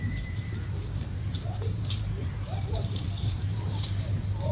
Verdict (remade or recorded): remade